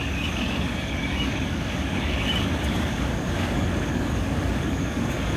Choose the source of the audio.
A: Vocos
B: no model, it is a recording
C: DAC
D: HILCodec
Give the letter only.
C